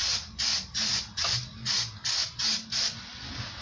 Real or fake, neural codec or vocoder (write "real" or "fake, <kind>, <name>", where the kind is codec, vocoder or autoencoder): real